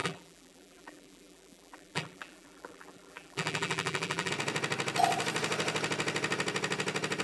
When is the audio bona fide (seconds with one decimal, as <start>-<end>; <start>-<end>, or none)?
4.3-7.2